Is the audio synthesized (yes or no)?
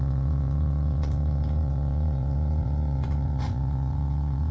yes